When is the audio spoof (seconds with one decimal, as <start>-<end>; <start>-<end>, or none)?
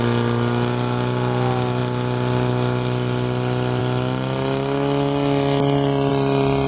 none